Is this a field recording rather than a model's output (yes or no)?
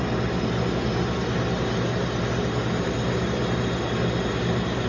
yes